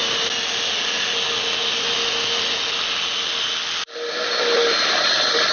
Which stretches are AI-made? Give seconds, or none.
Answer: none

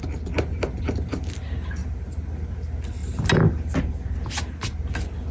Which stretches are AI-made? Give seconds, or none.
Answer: none